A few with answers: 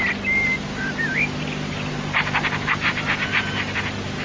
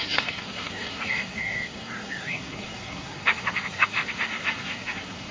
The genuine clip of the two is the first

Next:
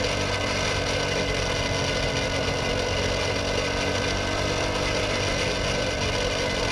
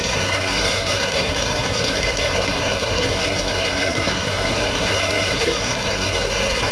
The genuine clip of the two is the first